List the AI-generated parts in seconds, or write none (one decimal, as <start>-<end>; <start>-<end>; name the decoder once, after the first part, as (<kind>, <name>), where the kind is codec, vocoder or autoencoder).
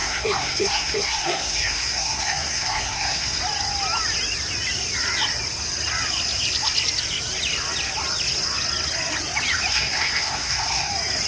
0.0-3.4 (codec, SNAC); 9.7-10.9